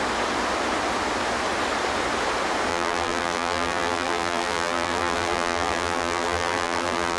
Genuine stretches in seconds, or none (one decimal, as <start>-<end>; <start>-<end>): 0.0-2.7